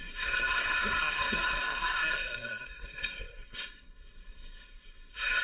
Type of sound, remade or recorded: remade